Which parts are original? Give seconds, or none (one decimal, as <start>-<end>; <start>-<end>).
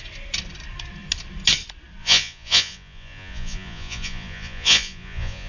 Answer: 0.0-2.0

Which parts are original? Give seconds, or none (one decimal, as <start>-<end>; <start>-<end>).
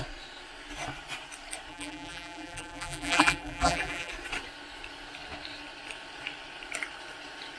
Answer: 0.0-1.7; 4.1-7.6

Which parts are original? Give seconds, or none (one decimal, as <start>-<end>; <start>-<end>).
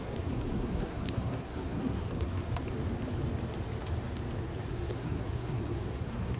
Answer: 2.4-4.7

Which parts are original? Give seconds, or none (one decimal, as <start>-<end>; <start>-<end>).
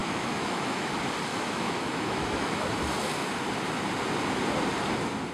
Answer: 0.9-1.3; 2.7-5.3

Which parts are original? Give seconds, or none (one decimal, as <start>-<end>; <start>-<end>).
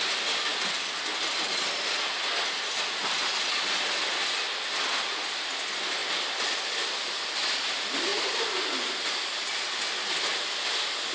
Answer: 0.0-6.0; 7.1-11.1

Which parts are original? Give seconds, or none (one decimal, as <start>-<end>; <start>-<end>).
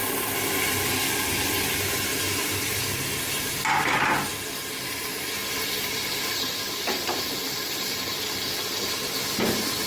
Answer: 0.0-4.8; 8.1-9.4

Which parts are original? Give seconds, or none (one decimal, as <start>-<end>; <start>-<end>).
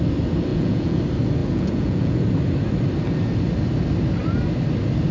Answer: 0.0-0.5; 1.0-1.4; 2.2-5.1